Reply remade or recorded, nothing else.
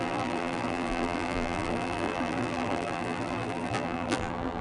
remade